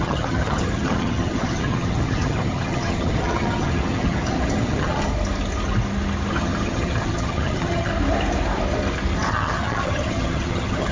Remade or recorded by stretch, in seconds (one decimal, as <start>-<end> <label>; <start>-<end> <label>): 0.0-5.1 remade; 5.1-6.3 recorded; 6.3-7.9 remade; 7.9-9.3 recorded; 9.3-10.9 remade